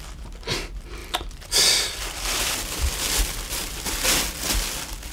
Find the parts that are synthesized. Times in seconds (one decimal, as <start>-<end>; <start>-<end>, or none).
1.0-4.0